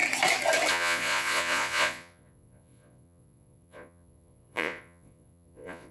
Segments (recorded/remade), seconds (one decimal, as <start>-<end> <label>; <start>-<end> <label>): 0.0-0.7 recorded; 0.7-5.9 remade